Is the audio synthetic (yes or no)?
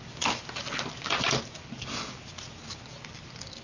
no